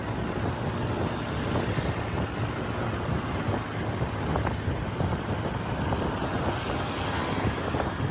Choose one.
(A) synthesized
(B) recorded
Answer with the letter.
B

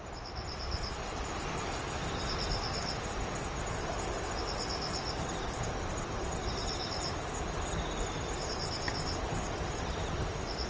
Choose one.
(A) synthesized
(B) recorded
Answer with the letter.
B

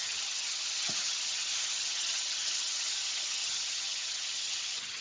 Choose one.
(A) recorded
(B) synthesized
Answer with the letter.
B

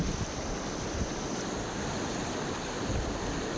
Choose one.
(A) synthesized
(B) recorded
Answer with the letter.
B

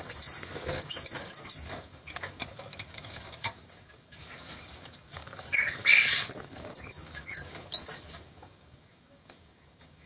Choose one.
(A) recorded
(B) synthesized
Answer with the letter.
B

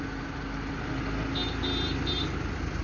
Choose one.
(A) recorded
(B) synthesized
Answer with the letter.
A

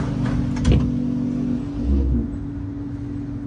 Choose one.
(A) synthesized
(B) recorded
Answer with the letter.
B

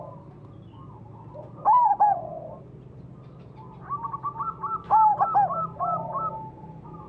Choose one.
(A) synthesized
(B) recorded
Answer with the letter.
B